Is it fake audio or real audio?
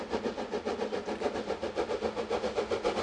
real